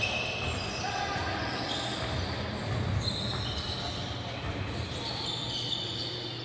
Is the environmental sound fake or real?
real